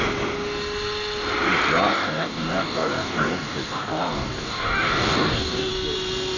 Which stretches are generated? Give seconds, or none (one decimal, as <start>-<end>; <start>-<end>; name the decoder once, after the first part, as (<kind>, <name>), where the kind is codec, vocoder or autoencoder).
1.9-5.7 (codec, DAC)